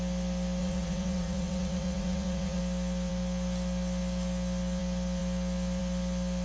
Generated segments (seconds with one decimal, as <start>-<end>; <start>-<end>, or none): 0.6-2.6